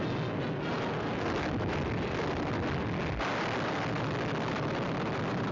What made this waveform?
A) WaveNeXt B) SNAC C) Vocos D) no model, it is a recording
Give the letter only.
D